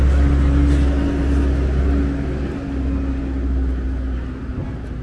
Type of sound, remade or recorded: recorded